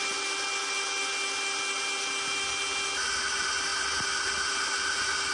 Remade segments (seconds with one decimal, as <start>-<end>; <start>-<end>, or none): none